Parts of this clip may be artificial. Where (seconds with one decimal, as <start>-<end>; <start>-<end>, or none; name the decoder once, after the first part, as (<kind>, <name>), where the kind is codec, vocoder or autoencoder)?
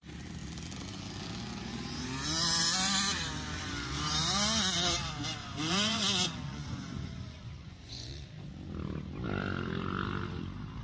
5.4-8.1 (vocoder, Vocos)